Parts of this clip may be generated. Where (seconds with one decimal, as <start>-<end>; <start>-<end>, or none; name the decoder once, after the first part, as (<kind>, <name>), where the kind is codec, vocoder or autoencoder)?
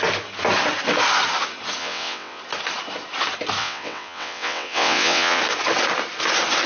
1.8-2.4 (vocoder, WaveNeXt); 3.6-5.4